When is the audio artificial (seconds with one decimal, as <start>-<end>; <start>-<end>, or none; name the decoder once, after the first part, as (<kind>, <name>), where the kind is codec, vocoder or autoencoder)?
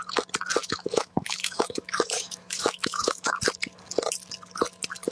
0.6-3.4 (autoencoder, DAC-VAE)